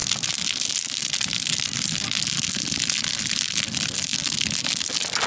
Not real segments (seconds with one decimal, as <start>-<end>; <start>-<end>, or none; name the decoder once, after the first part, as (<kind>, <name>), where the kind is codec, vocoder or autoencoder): none